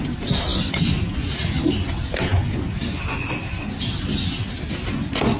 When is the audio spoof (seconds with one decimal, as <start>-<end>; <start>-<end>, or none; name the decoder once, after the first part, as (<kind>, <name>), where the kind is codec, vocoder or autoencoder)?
none